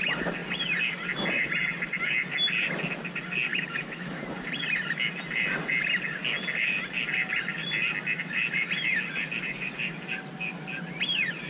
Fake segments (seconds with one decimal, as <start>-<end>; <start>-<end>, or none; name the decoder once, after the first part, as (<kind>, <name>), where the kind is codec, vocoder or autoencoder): 3.5-4.2 (autoencoder, DAC-VAE)